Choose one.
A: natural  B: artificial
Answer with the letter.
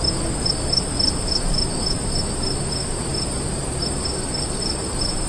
A